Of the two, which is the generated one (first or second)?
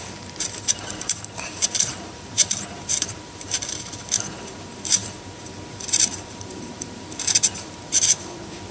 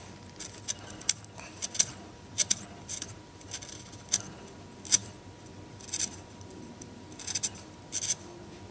first